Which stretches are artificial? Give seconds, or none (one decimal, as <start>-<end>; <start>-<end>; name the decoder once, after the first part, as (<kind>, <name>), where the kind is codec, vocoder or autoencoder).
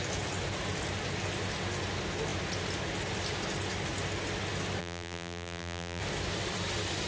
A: 4.8-6.0 (vocoder, BigVGAN v2)